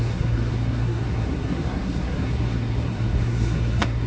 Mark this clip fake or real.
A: fake